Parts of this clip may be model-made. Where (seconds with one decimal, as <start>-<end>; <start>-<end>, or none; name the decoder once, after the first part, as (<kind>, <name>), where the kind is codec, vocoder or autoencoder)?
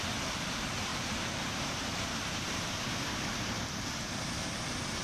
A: 0.9-3.5 (vocoder, BigVGAN v2)